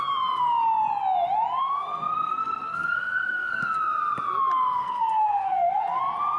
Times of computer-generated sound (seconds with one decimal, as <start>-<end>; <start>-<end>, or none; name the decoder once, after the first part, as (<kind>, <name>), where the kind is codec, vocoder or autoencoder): 1.6-3.8 (codec, SNAC); 4.8-6.0